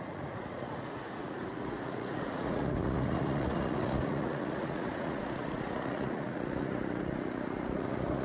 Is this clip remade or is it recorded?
remade